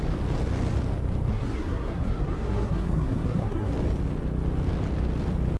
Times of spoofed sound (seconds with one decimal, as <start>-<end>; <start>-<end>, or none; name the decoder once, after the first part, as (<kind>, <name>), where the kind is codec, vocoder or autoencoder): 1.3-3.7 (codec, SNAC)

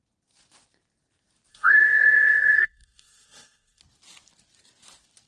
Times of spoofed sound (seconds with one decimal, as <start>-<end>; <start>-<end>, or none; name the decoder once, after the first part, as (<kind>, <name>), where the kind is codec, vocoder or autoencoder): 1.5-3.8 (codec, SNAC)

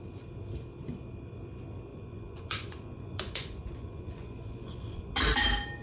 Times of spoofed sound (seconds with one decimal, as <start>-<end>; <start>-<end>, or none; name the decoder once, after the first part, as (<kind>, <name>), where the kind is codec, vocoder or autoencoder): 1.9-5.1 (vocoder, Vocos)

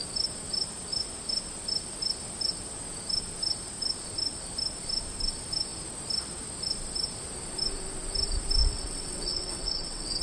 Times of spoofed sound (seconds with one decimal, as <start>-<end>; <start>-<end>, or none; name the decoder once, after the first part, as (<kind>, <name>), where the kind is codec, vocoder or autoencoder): 8.6-10.2 (vocoder, WaveNeXt)

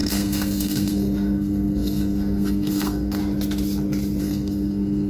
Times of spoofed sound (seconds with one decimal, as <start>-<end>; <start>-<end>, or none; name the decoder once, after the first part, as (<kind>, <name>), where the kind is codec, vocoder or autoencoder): 0.0-3.2 (codec, SNAC); 4.2-5.1

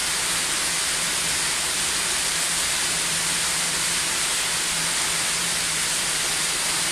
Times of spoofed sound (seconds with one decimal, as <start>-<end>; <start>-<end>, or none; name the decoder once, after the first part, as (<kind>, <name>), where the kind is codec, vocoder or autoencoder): 0.8-4.3 (vocoder, BigVGAN v2); 5.4-6.9